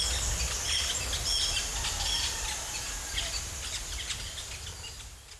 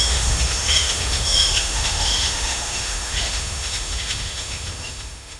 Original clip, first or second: first